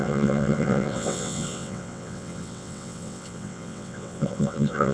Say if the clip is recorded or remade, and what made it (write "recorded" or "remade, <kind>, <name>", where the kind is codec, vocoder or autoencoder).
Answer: remade, vocoder, WaveNeXt